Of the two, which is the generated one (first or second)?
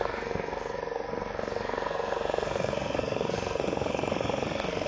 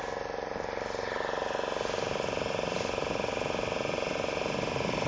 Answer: first